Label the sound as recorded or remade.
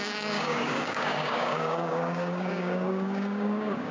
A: remade